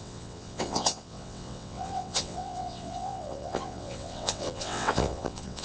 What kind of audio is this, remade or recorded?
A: remade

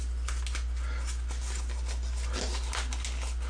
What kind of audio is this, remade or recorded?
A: recorded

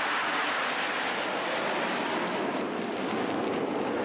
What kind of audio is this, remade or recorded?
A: recorded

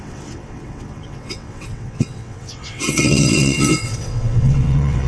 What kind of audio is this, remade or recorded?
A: remade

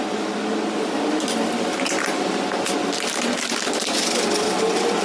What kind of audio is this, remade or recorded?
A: recorded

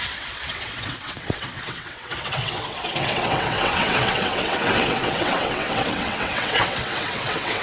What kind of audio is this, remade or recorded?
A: remade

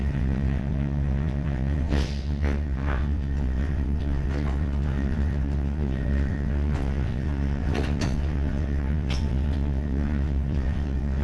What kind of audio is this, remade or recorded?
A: remade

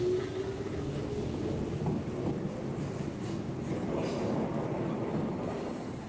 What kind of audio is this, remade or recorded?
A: recorded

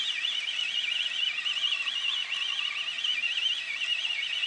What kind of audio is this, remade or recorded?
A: recorded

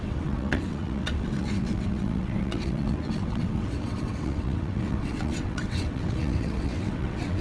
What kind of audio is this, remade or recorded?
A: remade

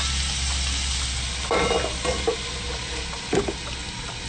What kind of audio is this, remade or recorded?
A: recorded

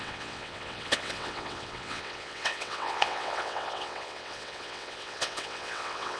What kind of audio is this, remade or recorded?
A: remade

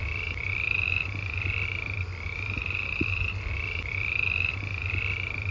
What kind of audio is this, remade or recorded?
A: recorded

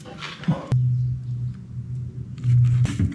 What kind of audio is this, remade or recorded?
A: recorded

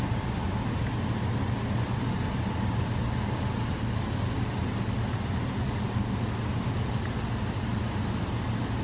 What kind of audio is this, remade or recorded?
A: recorded